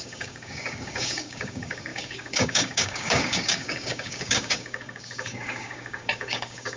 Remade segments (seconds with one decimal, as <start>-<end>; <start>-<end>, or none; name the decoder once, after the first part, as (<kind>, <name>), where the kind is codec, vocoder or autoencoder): 0.0-6.8 (codec, DAC)